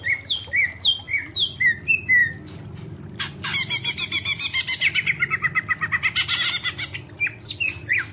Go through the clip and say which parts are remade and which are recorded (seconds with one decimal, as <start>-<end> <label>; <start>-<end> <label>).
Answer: 0.0-8.1 recorded